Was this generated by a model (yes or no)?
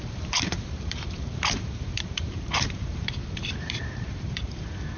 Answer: yes